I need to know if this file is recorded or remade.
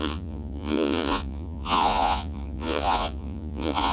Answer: remade